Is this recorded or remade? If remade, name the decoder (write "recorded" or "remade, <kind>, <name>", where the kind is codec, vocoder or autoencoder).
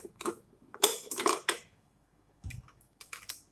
remade, autoencoder, DAC-VAE